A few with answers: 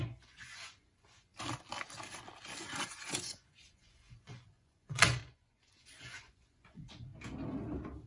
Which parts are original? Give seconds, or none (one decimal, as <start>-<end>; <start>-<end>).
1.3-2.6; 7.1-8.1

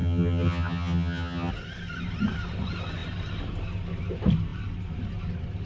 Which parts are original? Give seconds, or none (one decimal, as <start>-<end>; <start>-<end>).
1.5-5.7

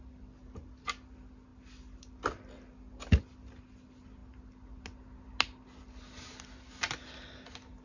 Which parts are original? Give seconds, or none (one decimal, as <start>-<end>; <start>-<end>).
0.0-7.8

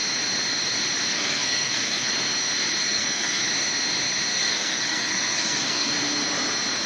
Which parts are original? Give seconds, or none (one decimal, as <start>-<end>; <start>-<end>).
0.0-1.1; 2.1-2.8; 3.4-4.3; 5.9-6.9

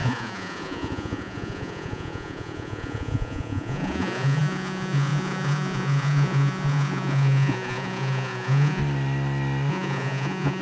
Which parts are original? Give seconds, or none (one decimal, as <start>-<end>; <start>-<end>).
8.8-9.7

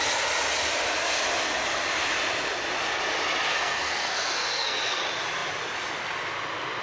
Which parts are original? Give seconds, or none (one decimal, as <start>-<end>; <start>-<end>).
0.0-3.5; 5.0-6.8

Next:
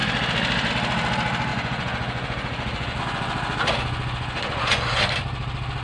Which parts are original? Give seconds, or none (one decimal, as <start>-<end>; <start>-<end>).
0.0-1.5; 5.0-5.8

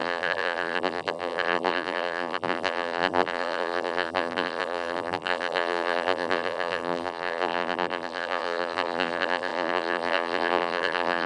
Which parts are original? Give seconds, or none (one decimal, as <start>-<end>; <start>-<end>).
none